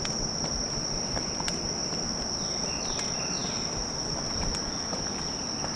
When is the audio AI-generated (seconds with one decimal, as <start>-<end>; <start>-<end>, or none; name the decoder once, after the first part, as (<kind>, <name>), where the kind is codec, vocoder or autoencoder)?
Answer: none